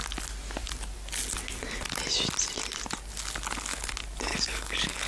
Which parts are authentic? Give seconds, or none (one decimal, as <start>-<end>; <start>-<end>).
0.0-4.3